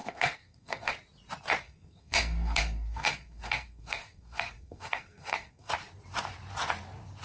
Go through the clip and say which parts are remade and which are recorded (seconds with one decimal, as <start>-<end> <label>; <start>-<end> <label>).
0.0-0.9 remade; 0.9-1.6 recorded; 1.6-5.7 remade; 5.7-7.2 recorded